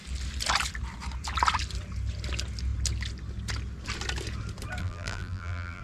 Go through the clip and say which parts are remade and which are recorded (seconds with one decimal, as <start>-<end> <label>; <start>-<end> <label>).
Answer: 0.0-4.8 recorded; 4.8-5.8 remade